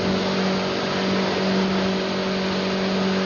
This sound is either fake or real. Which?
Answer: real